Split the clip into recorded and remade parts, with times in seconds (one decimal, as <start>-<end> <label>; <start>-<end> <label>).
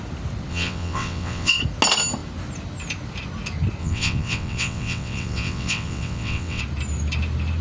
0.0-0.5 recorded; 0.5-1.6 remade; 1.6-3.8 recorded; 3.8-6.6 remade; 6.6-7.6 recorded